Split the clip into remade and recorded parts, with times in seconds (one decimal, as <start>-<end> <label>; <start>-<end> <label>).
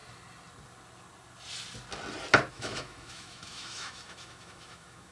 0.0-2.5 recorded; 2.5-5.1 remade